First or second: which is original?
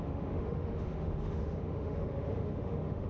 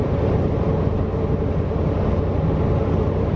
second